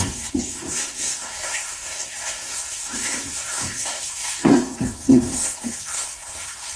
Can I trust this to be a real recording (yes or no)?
no